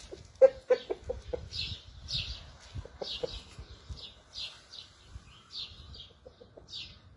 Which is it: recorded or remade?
recorded